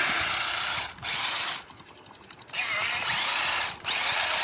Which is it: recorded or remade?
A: recorded